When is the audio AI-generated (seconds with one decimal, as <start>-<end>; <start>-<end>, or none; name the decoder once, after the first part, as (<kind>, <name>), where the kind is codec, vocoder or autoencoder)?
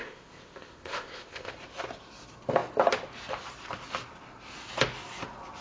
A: 0.0-1.5 (codec, ZipCodec)